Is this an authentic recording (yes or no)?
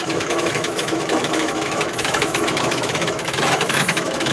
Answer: no